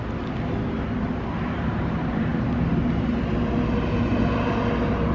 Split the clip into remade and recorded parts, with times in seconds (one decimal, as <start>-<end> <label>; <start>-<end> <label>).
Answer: 0.0-5.1 recorded